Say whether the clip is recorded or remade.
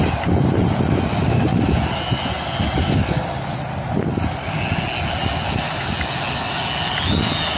recorded